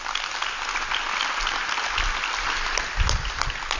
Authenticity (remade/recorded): recorded